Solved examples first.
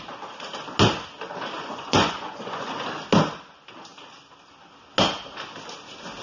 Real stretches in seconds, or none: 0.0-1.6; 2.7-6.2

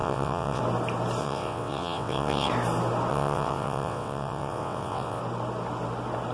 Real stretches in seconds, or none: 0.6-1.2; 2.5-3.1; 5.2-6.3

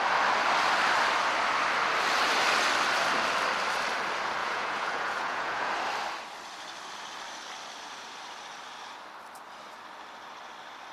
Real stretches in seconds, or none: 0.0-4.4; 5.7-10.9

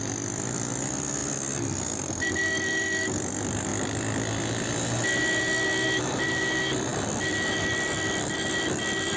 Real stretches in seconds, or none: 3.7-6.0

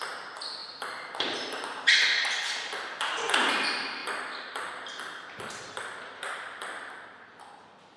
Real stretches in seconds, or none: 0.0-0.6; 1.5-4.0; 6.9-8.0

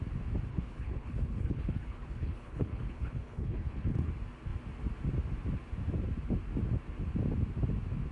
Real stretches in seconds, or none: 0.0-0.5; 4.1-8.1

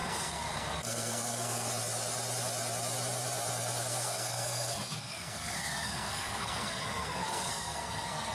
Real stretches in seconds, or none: 1.7-3.9

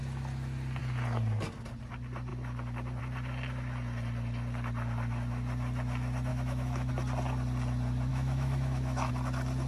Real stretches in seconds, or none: 0.0-6.3; 6.9-8.1; 9.1-9.7